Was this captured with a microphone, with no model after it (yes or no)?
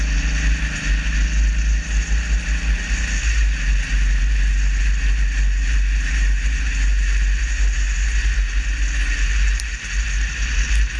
yes